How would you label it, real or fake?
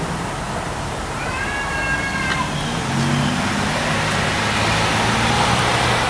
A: real